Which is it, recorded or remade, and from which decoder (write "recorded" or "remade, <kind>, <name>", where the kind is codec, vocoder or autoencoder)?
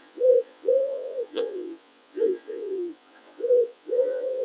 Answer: remade, vocoder, Vocos